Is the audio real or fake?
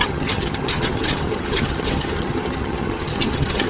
fake